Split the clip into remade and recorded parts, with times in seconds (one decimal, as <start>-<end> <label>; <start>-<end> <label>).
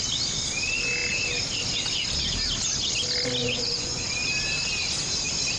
0.0-3.4 recorded; 3.4-4.0 remade; 4.0-5.6 recorded